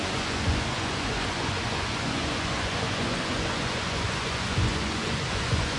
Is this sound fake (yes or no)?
yes